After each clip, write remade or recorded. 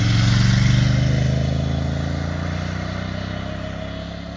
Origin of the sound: recorded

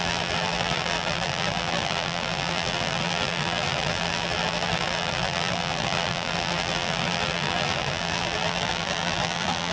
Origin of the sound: remade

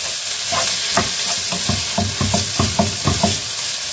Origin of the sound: recorded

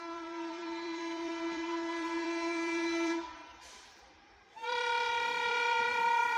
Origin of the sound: remade